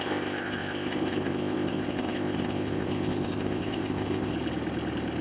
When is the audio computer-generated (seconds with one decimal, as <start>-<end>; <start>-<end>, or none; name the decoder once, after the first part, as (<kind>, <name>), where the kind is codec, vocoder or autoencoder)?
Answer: 0.0-4.3 (codec, ZipCodec)